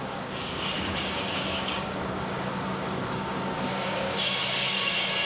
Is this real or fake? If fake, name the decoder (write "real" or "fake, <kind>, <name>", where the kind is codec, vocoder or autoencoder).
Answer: fake, codec, DAC